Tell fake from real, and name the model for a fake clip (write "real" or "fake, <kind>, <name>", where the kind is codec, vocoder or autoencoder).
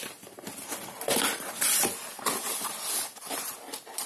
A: real